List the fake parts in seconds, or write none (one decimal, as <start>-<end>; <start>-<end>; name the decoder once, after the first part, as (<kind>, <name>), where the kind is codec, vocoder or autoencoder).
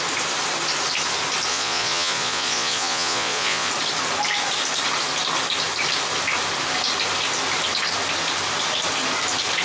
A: 1.5-3.7 (vocoder, Vocos)